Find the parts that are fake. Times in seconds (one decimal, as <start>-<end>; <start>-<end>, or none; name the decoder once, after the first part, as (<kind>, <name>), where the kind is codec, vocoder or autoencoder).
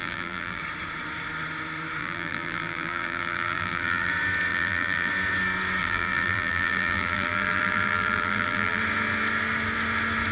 0.0-0.6 (vocoder, BigVGAN v2); 2.0-4.1; 4.5-5.1; 5.8-8.8